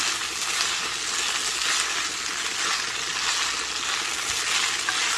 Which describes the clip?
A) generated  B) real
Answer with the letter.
B